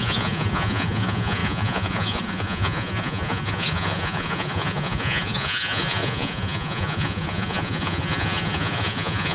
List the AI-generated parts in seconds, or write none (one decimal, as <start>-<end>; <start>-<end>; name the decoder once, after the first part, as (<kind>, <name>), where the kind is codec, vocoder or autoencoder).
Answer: 0.0-9.3 (vocoder, Vocos)